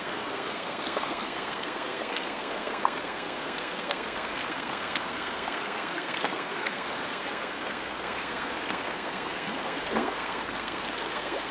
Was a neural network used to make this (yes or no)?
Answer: yes